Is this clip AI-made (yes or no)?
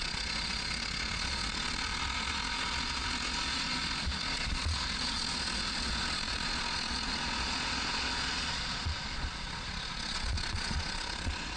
yes